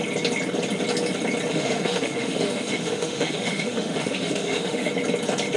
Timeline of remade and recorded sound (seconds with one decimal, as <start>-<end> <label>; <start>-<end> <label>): 0.0-1.5 recorded; 1.5-4.9 remade; 4.9-5.6 recorded